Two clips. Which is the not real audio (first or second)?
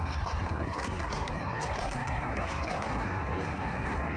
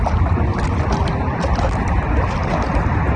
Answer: first